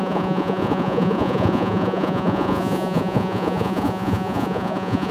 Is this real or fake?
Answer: fake